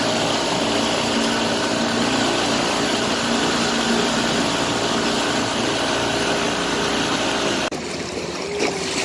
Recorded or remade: recorded